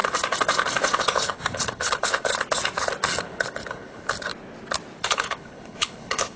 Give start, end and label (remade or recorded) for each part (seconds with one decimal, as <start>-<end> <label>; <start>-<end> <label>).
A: 0.0-1.0 recorded; 1.0-2.3 remade; 2.3-3.2 recorded; 3.2-4.3 remade; 4.3-5.0 recorded; 5.0-6.4 remade